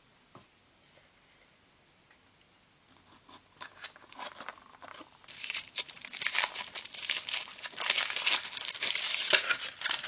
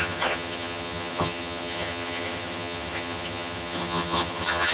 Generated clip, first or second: second